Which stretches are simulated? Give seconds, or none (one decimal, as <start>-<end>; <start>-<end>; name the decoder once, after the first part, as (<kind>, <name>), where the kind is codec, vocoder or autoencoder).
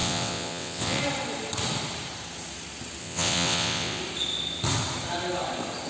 0.0-1.0 (vocoder, WaveNeXt); 3.0-4.0